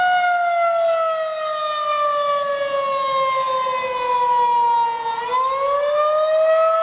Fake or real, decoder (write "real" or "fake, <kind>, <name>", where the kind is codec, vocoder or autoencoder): real